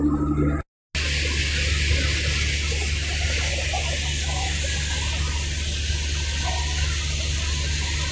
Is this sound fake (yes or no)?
no